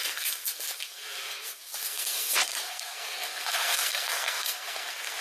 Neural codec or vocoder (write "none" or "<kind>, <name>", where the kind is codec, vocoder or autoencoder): codec, SNAC